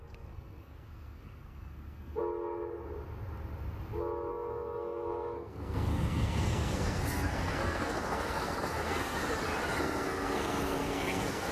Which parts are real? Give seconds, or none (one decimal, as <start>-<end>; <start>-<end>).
2.2-4.3; 9.2-9.8